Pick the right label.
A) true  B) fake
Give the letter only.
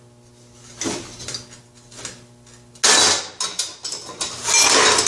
A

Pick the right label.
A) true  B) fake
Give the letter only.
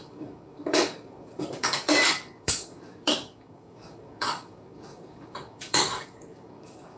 B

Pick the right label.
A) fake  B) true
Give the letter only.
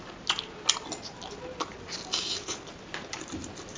B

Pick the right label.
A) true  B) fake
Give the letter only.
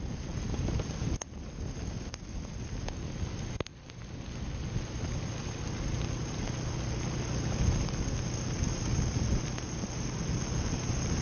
A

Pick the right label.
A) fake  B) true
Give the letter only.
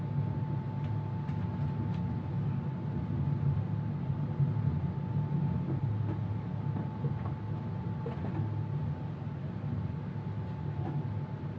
B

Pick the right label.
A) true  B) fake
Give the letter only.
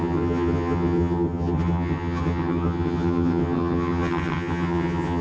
B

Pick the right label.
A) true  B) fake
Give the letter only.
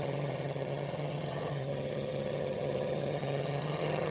B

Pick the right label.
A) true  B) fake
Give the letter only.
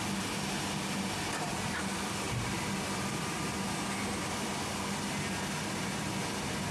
A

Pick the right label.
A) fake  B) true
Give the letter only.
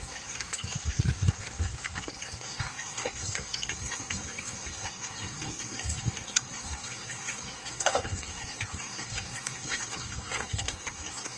A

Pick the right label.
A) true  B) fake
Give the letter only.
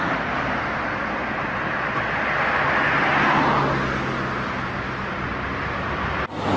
A